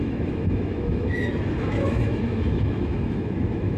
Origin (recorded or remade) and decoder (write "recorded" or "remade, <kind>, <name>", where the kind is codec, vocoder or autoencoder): remade, autoencoder, DAC-VAE